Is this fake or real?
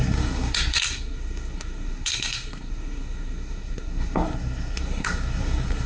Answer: fake